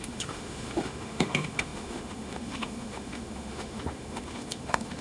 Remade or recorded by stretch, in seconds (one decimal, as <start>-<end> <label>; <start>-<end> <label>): 0.0-5.0 remade